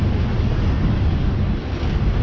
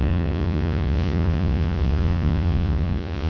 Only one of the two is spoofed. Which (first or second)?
second